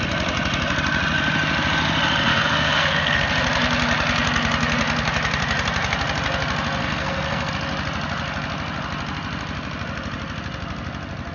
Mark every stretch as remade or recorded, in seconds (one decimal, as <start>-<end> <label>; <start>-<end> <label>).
0.0-2.3 recorded; 2.3-3.3 remade; 3.3-6.8 recorded; 6.8-7.5 remade; 7.5-11.3 recorded